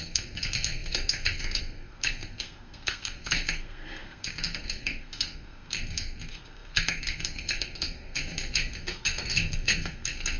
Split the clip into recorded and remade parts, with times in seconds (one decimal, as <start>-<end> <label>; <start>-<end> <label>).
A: 0.0-10.4 remade